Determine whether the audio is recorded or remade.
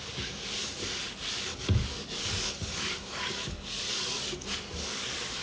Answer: remade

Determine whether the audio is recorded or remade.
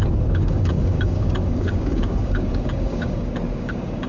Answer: remade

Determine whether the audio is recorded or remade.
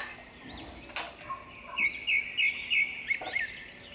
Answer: recorded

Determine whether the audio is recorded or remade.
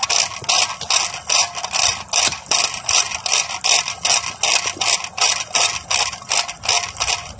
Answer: recorded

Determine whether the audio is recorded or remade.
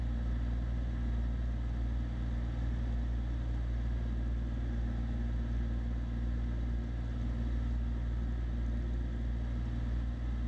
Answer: recorded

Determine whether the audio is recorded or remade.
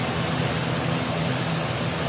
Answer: recorded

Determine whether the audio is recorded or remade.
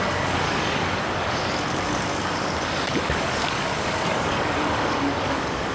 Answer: remade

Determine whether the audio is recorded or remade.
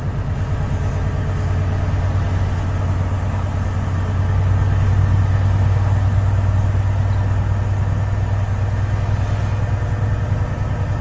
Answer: recorded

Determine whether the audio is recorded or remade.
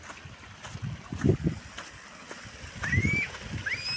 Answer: recorded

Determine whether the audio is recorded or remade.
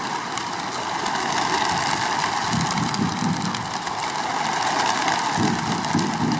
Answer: recorded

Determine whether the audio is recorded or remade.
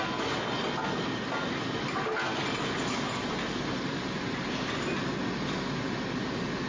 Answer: recorded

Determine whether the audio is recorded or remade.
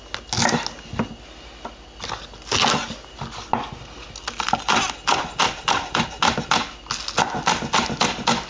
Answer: recorded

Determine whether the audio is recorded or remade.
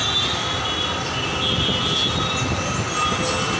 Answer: recorded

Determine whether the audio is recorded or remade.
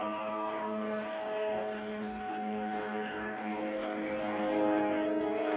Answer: remade